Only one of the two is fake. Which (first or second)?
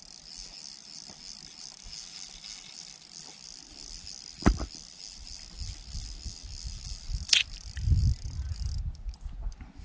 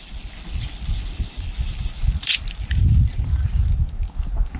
second